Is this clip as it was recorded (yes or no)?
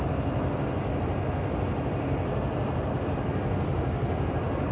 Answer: yes